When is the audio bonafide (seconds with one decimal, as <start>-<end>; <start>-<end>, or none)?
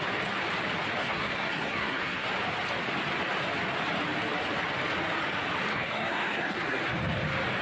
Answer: 0.0-1.0; 2.3-5.7; 6.8-7.6